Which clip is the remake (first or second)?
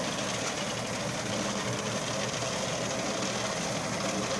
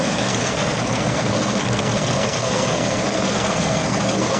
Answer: second